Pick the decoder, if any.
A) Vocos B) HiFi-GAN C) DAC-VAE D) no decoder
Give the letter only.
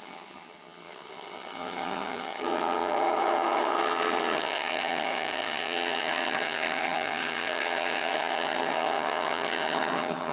B